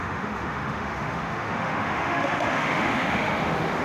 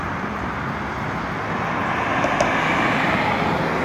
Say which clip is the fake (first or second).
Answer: first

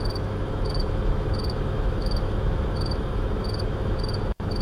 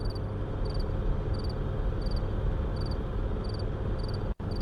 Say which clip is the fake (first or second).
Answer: first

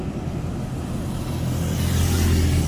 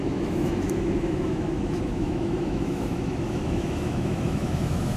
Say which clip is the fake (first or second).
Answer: second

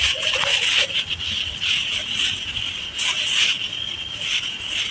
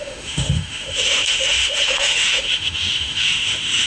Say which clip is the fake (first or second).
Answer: second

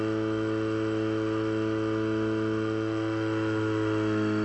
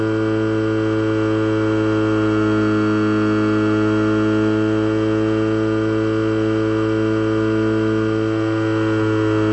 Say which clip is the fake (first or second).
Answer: first